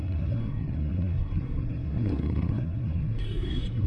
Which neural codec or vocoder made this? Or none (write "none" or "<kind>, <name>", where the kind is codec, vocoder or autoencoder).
codec, SNAC